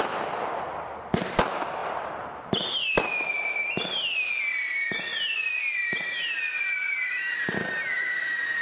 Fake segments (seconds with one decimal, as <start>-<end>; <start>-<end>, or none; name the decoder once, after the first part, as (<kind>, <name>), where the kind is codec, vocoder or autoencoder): 1.8-4.3 (vocoder, BigVGAN v2); 5.1-6.3